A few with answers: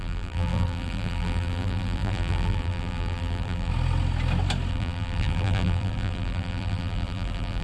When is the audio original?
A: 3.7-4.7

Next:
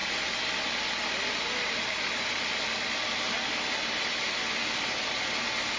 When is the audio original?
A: 0.0-5.8